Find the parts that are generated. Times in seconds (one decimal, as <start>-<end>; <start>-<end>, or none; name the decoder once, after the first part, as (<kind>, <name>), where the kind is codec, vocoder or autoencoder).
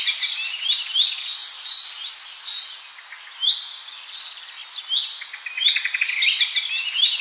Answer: none